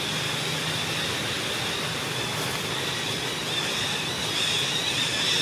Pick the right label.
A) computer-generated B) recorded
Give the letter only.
B